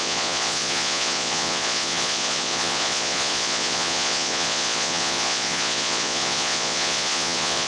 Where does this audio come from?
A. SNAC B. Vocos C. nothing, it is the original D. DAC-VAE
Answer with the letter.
B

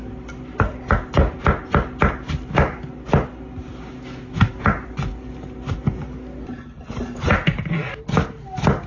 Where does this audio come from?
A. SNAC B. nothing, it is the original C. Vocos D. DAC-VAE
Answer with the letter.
B